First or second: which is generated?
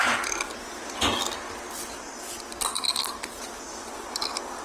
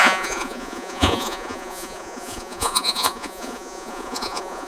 second